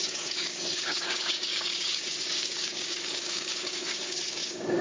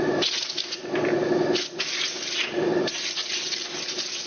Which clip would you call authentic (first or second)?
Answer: second